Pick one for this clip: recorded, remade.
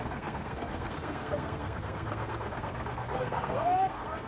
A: remade